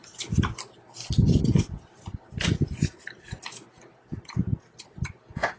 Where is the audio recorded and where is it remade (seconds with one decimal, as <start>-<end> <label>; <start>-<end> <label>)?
0.0-5.6 recorded

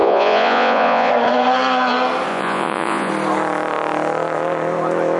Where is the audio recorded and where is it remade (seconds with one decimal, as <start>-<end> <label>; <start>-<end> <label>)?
0.0-1.1 remade; 1.1-2.3 recorded; 2.3-3.1 remade; 3.1-5.2 recorded

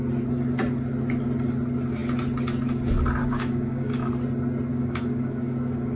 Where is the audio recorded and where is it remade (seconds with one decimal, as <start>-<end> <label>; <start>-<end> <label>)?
0.0-3.2 recorded; 3.2-4.1 remade; 4.1-4.7 recorded; 4.7-6.0 remade

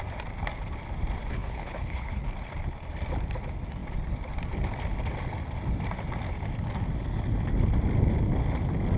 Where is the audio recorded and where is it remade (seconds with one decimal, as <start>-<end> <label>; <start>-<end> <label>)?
0.0-1.3 recorded; 1.3-2.2 remade; 2.2-9.0 recorded

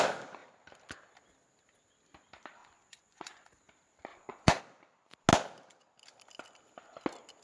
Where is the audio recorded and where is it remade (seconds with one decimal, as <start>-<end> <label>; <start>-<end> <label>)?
0.0-2.6 recorded; 2.6-3.5 remade; 3.5-4.1 recorded; 4.1-4.6 remade; 4.6-7.4 recorded

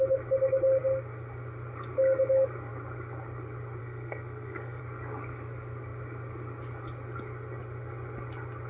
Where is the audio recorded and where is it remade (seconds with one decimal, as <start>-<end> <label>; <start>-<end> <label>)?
0.0-3.8 recorded; 3.8-4.8 remade; 4.8-8.7 recorded

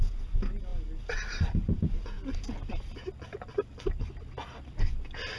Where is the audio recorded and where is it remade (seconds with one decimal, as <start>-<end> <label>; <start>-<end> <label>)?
0.0-5.4 recorded